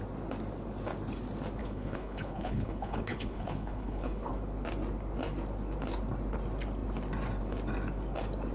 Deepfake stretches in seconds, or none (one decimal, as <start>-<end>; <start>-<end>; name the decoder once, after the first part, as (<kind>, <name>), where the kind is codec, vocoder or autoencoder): 1.6-4.3 (codec, HILCodec)